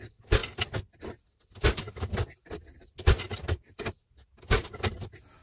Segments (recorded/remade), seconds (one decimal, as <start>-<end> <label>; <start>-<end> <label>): 0.0-5.4 recorded